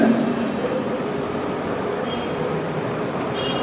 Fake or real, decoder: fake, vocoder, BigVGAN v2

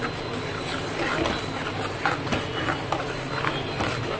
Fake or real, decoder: real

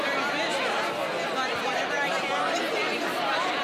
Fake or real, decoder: real